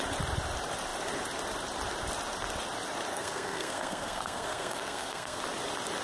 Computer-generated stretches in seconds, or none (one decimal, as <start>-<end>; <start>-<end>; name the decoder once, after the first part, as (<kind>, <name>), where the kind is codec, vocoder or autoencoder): 3.1-5.4 (codec, SNAC)